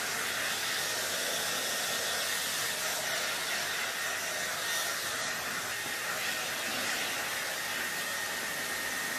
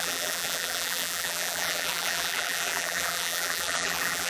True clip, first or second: first